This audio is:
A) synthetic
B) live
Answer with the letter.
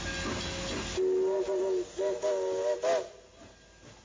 B